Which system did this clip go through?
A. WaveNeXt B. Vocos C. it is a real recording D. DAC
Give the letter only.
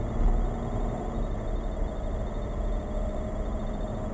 C